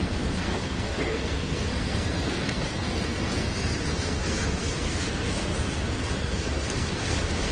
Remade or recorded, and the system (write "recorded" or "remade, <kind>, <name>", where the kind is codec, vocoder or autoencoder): remade, codec, SNAC